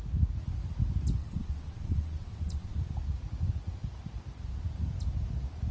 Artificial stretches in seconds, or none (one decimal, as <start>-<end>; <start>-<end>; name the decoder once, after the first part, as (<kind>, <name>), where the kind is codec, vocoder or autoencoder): 1.2-2.8 (vocoder, WaveNeXt)